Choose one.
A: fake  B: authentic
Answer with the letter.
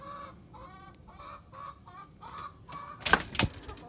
B